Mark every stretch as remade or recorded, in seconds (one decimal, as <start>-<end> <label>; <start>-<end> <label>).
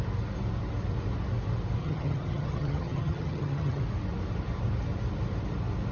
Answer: 0.0-1.8 recorded; 1.8-3.8 remade; 3.8-5.9 recorded